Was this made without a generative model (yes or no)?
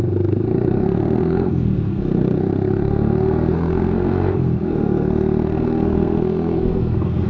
no